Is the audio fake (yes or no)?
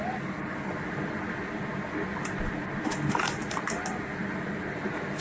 no